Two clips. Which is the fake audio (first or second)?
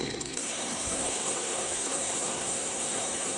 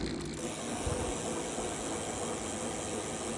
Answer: first